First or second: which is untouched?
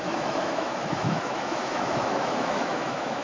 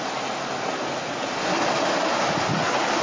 second